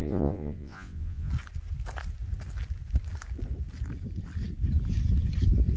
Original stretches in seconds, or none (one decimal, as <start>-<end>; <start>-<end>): 1.3-5.8